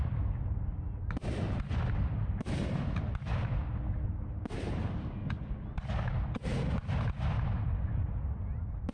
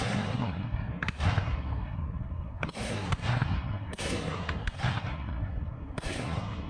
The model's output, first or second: second